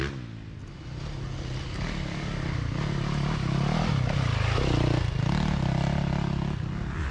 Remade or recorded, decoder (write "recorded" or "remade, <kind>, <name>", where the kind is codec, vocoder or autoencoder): recorded